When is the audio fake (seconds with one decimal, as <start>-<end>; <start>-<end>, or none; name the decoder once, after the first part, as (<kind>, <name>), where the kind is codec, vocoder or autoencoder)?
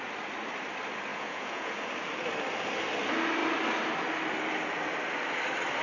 1.1-1.8 (vocoder, Vocos)